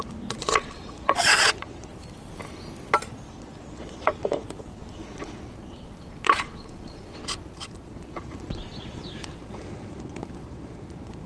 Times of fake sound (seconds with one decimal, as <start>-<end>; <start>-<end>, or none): 0.0-1.9; 3.3-11.3